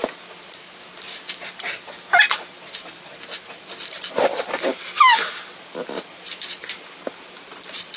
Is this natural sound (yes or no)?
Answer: yes